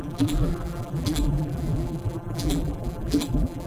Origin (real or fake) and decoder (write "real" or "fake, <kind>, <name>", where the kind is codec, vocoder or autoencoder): fake, vocoder, BigVGAN v2